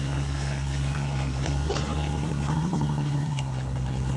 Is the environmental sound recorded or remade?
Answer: remade